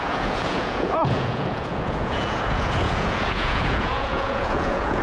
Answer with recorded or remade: remade